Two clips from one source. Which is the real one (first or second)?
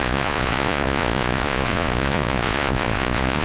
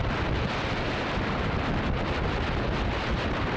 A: second